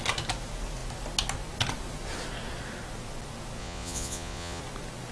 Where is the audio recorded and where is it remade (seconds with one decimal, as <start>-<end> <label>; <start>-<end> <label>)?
0.0-3.6 recorded; 3.6-4.6 remade; 4.6-5.1 recorded